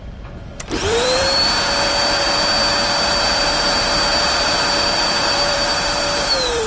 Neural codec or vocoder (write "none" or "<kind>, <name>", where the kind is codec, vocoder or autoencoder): vocoder, BigVGAN v2